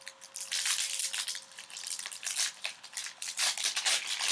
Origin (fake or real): real